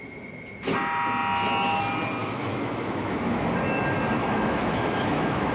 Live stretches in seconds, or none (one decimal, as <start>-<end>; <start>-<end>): 0.0-2.2; 3.5-4.2